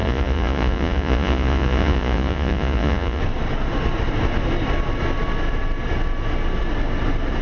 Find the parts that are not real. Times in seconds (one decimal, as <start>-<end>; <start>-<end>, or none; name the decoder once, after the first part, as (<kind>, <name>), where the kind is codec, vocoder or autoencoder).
0.0-3.2 (vocoder, Vocos)